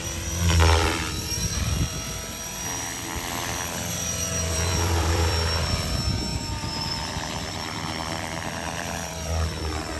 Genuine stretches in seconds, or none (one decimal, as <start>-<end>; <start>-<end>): none